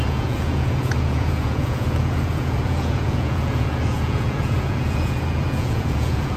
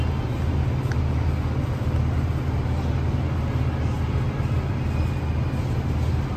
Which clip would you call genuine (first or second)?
second